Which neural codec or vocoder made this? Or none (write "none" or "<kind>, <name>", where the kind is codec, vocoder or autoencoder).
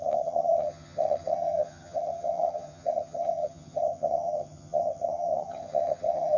vocoder, HiFi-GAN